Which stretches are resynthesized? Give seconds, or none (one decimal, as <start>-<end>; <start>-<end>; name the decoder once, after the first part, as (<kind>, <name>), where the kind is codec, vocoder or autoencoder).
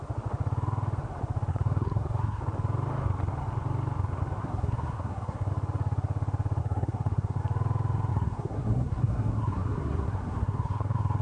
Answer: 1.5-2.4 (codec, SNAC); 4.4-5.5; 6.6-7.4; 8.1-11.2